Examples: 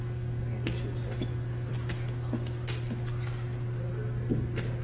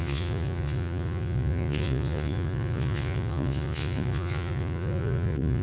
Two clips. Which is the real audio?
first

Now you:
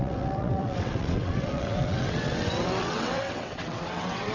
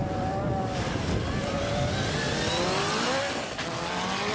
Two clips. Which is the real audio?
second